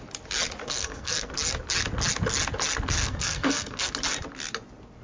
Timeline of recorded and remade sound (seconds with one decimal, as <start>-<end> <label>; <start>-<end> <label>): 0.0-0.6 recorded; 0.6-1.3 remade; 1.3-3.0 recorded; 3.0-3.9 remade; 3.9-5.0 recorded